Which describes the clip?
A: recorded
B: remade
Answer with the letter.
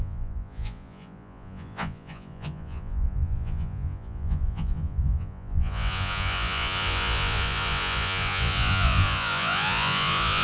B